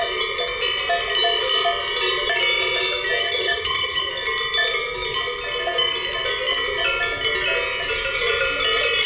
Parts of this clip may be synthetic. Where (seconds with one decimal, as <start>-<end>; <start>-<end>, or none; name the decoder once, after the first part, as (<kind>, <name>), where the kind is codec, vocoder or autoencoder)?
3.2-4.1 (vocoder, HiFi-GAN)